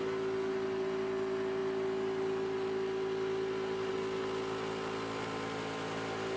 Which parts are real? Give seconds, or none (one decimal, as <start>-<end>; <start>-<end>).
0.0-6.4